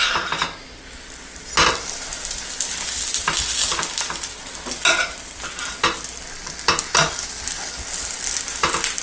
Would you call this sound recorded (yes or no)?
yes